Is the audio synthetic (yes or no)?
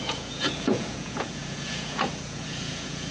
yes